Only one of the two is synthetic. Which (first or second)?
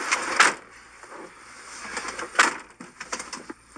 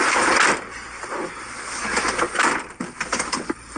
second